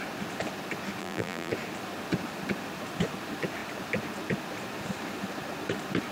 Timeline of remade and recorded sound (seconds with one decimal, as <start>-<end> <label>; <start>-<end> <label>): 0.0-1.0 recorded; 1.0-1.5 remade; 1.5-6.1 recorded